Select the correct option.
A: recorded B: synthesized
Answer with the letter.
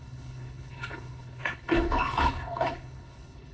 B